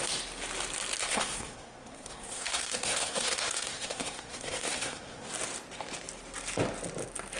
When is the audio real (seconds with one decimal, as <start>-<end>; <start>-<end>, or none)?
0.0-1.0; 5.3-7.4